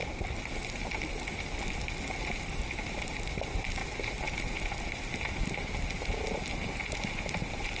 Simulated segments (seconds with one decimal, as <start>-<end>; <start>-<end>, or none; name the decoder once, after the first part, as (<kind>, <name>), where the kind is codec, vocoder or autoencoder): none